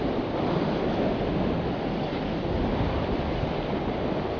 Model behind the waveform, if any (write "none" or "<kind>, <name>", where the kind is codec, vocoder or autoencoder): none